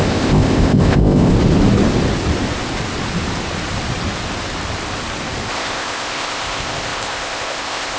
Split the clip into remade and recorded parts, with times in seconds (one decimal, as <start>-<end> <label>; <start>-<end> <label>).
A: 0.0-1.3 remade; 1.3-5.5 recorded; 5.5-8.0 remade